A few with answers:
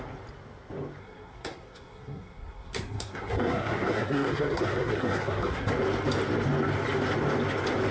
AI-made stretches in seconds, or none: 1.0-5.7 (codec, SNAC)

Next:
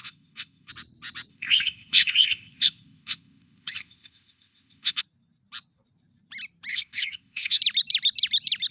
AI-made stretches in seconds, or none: 0.0-0.7 (codec, ZipCodec); 1.3-5.0; 6.7-7.6

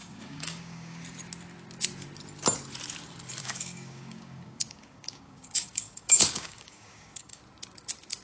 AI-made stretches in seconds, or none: 0.0-1.0 (codec, DAC); 3.4-7.4